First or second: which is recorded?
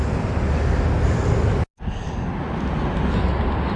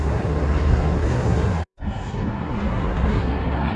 first